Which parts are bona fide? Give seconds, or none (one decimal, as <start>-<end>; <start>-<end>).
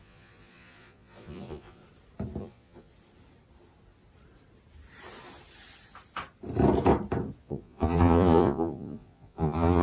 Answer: 1.8-2.4; 2.9-7.4